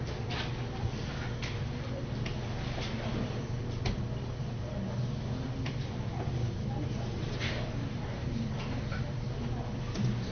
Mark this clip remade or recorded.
recorded